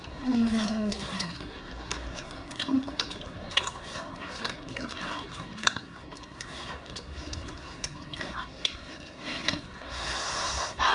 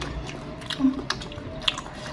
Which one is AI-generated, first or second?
first